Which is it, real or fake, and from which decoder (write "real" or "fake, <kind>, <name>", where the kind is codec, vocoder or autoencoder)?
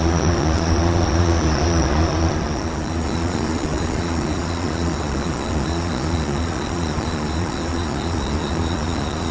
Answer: fake, vocoder, Vocos